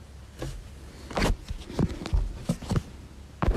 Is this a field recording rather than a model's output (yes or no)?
yes